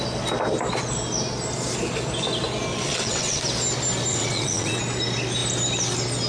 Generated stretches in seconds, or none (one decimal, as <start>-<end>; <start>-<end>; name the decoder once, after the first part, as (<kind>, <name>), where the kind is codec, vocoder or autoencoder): 2.7-3.4 (vocoder, WaveNeXt); 4.1-4.8